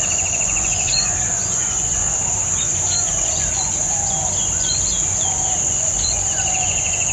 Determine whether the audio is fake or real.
fake